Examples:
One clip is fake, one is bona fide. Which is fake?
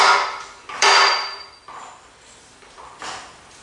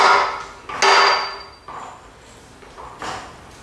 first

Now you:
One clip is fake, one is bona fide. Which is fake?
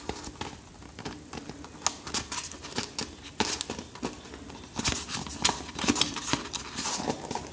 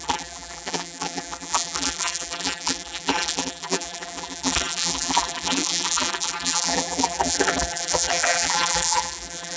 second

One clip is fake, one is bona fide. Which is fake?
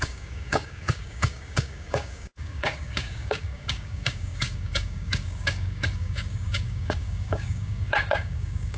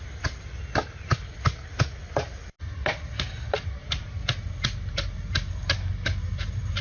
first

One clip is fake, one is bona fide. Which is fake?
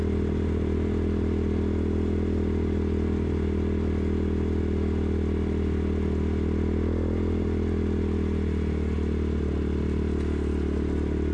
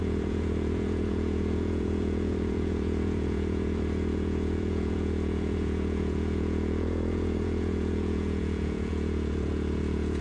second